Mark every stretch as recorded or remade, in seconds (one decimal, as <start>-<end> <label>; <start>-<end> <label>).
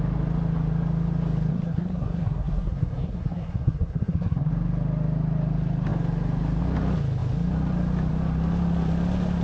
0.0-1.5 recorded; 1.5-4.5 remade; 4.5-9.4 recorded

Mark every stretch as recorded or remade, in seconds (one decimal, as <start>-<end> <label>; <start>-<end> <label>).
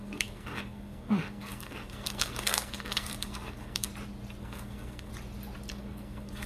0.0-3.9 remade; 3.9-4.4 recorded; 4.4-5.1 remade; 5.1-5.7 recorded; 5.7-6.5 remade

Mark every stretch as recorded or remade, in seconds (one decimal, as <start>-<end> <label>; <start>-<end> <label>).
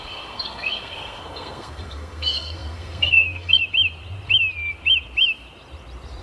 0.0-3.6 remade; 3.6-6.2 recorded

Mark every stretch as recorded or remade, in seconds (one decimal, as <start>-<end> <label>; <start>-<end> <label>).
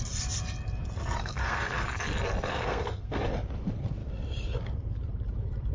0.0-1.2 recorded; 1.2-2.0 remade; 2.0-2.5 recorded; 2.5-3.2 remade; 3.2-5.7 recorded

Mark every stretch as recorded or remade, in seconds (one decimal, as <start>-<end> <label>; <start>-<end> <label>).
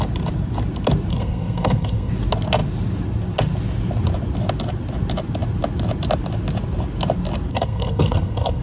0.0-1.1 recorded; 1.1-2.1 remade; 2.1-7.5 recorded; 7.5-8.6 remade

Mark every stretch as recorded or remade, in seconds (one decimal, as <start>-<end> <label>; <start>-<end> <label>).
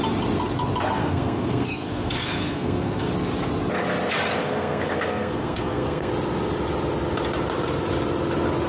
0.0-1.0 recorded; 1.0-3.1 remade; 3.1-4.4 recorded; 4.4-6.1 remade; 6.1-8.7 recorded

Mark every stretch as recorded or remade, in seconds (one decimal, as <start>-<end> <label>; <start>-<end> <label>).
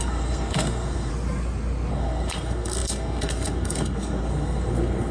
0.0-1.1 remade; 1.1-1.9 recorded; 1.9-5.1 remade